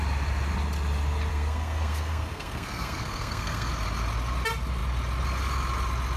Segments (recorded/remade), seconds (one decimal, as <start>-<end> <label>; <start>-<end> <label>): 0.0-1.3 recorded; 1.3-3.7 remade; 3.7-6.2 recorded